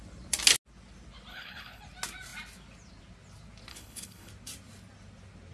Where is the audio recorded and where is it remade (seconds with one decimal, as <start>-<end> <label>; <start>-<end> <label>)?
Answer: 0.0-1.3 recorded; 1.3-1.8 remade; 1.8-3.7 recorded; 3.7-4.3 remade; 4.3-5.5 recorded